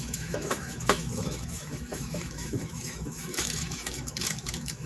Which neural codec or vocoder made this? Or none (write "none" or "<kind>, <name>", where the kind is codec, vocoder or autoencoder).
autoencoder, DAC-VAE